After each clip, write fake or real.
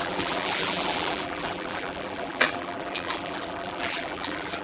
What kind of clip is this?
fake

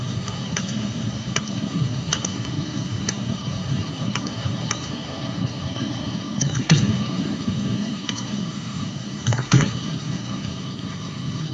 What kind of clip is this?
fake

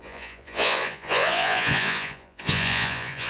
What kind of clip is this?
fake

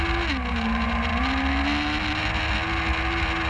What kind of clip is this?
real